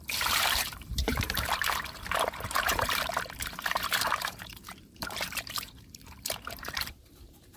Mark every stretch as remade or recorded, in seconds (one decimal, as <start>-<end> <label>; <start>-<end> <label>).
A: 0.0-7.6 remade